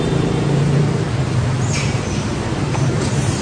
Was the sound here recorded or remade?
remade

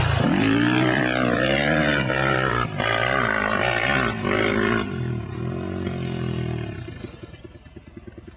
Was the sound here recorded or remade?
recorded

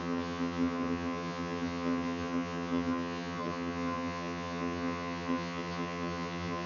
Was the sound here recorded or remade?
remade